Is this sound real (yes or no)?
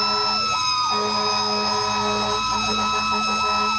yes